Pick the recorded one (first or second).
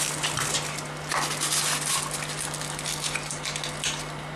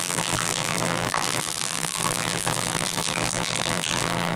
first